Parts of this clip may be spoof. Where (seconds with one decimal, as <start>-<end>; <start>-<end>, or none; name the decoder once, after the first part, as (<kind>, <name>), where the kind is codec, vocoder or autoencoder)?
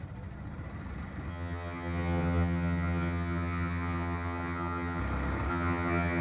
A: 1.3-5.0 (vocoder, HiFi-GAN); 5.5-6.2